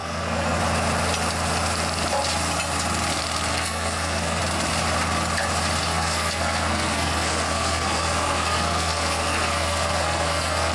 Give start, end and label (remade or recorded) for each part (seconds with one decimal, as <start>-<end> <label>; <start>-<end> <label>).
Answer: 0.0-0.6 remade; 0.6-3.5 recorded; 3.5-4.4 remade; 4.4-5.9 recorded; 5.9-10.7 remade